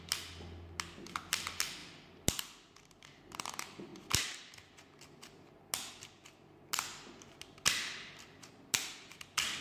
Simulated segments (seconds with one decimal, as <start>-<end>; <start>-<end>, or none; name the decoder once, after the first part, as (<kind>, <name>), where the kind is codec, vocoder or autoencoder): none